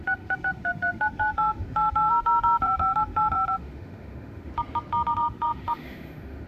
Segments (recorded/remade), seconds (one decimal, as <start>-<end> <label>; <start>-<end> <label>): 0.0-4.5 remade; 4.5-5.1 recorded; 5.1-6.5 remade